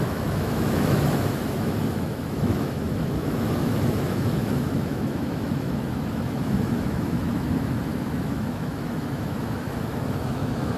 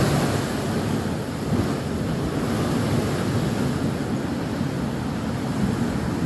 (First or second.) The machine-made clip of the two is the first